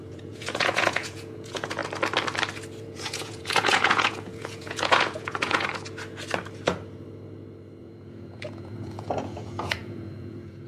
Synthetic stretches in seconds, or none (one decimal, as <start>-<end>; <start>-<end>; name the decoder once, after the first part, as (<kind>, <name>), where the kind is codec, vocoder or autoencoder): 0.0-1.8 (vocoder, Vocos); 2.8-5.7; 7.8-10.7